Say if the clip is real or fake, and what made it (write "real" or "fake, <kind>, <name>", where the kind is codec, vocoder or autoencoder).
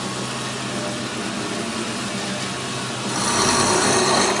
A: real